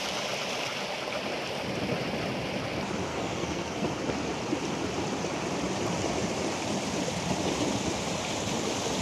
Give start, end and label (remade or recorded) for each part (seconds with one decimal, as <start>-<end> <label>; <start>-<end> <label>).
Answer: 0.0-3.1 recorded; 3.1-4.0 remade; 4.0-9.0 recorded